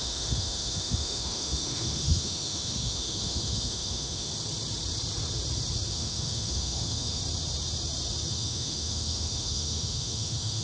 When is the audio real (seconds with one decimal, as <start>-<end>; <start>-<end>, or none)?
4.3-5.9; 7.2-8.3